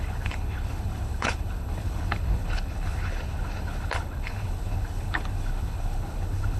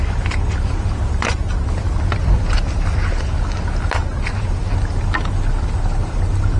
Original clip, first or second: second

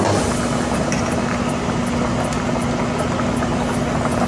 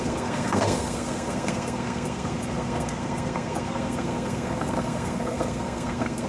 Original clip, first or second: first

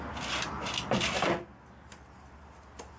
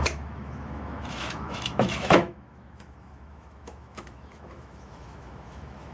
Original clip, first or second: first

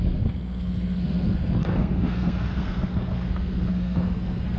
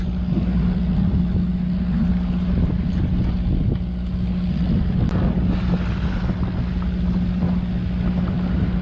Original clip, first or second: second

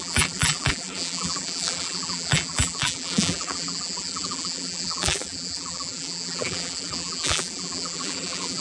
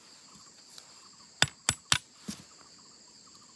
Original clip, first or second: second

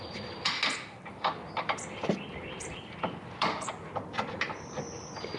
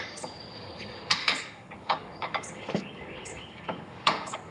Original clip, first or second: first